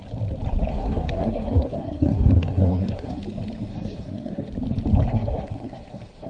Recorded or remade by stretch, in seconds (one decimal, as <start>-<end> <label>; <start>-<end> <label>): 0.0-0.7 recorded; 0.7-3.2 remade; 3.2-3.7 recorded; 3.7-4.5 remade; 4.5-5.1 recorded; 5.1-6.3 remade